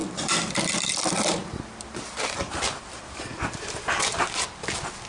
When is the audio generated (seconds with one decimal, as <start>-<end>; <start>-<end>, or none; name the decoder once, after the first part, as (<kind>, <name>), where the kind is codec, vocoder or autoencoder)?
0.0-2.8 (vocoder, BigVGAN v2); 3.3-4.2